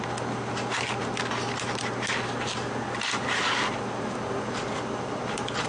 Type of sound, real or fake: real